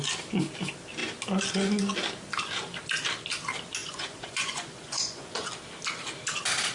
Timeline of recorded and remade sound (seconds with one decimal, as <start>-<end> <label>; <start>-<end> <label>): 0.0-3.8 recorded; 3.8-5.5 remade; 5.5-6.7 recorded